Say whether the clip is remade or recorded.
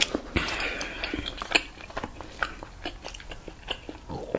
recorded